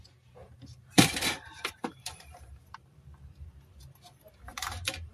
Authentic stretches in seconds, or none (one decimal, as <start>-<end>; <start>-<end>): 0.0-0.4; 3.5-4.5